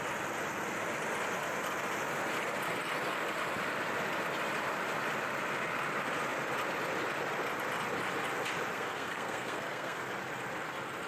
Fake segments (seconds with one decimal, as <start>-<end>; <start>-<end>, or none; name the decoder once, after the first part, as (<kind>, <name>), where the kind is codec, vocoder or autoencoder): 8.7-10.1 (codec, SNAC)